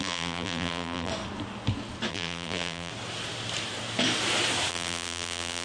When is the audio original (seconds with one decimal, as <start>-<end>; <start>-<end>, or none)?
1.1-2.1; 2.9-4.7